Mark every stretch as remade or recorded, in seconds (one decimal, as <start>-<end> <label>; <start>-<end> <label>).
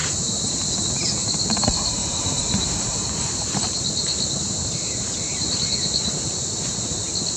0.0-0.5 remade; 0.5-1.2 recorded; 1.2-5.6 remade; 5.6-7.4 recorded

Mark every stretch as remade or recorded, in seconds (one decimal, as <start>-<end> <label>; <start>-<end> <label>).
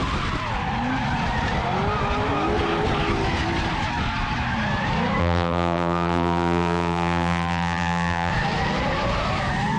0.0-5.2 recorded; 5.2-8.3 remade; 8.3-9.8 recorded